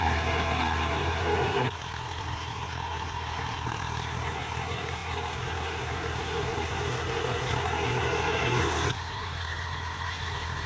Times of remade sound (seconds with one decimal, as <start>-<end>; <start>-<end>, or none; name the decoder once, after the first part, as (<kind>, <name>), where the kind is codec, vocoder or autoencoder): 0.0-10.7 (codec, SNAC)